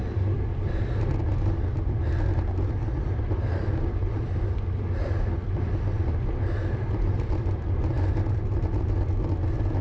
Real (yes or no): yes